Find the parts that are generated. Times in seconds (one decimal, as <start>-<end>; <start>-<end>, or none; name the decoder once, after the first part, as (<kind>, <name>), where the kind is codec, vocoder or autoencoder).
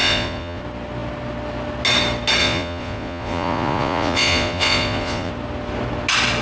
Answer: 0.0-0.6 (vocoder, Vocos); 2.4-5.3